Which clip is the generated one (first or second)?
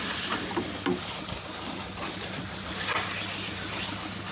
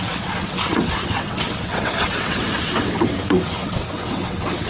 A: second